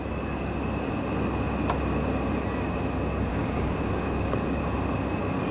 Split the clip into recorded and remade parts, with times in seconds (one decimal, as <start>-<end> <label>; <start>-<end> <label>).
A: 0.0-3.3 recorded; 3.3-4.6 remade; 4.6-5.5 recorded